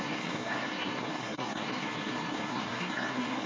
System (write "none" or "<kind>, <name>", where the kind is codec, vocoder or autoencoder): codec, SNAC